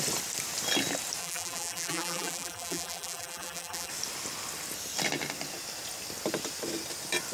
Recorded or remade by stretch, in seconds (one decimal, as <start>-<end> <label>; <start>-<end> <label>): 0.0-1.2 recorded; 1.2-3.9 remade; 3.9-7.3 recorded